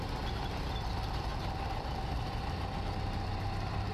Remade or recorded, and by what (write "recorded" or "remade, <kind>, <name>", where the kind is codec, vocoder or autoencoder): recorded